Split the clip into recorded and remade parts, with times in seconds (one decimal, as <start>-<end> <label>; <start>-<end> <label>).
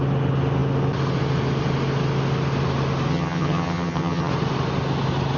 0.0-3.1 recorded; 3.1-4.3 remade; 4.3-5.4 recorded